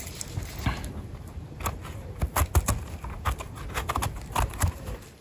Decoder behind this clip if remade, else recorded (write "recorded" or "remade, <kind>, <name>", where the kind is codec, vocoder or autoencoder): recorded